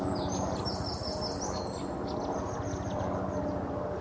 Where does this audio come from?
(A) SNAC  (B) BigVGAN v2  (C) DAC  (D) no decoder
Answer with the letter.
D